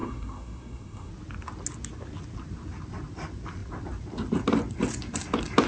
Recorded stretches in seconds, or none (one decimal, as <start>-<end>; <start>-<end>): 1.1-5.7